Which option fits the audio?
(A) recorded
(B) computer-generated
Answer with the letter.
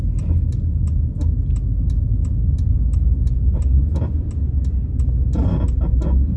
A